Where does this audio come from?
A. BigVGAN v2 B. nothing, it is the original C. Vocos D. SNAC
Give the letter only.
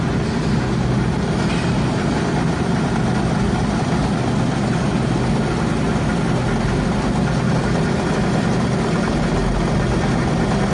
B